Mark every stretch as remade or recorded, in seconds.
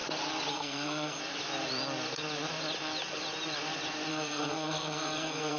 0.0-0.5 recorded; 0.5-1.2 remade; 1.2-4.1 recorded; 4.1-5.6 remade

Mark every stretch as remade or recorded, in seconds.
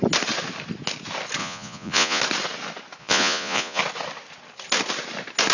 0.0-1.4 recorded; 1.4-2.2 remade; 2.2-3.0 recorded; 3.0-3.8 remade; 3.8-5.5 recorded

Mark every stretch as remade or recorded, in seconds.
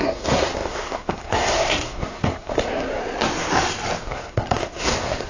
0.0-3.0 remade; 3.0-4.0 recorded; 4.0-5.3 remade